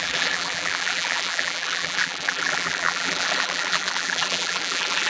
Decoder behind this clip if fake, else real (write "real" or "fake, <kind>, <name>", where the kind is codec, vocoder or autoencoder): fake, vocoder, BigVGAN v2